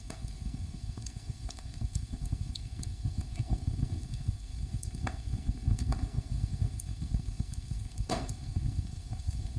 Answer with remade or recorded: remade